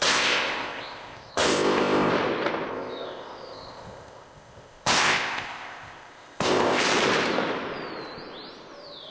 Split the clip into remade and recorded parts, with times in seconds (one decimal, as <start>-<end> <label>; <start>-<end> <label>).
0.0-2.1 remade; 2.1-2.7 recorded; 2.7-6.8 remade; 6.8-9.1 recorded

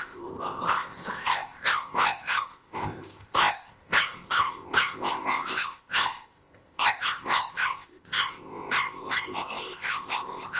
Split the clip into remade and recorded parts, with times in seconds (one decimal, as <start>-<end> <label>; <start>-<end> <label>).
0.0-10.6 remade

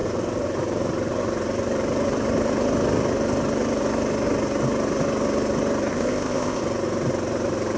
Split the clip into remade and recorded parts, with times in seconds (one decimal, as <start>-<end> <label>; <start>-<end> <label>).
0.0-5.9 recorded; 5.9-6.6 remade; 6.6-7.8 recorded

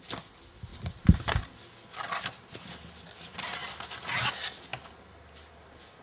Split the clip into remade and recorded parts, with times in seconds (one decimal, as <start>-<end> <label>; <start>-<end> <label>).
0.0-6.0 recorded